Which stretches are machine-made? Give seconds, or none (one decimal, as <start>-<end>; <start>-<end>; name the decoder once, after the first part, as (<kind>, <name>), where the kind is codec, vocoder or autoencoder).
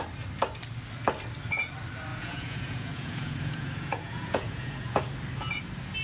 2.1-5.0 (vocoder, Vocos)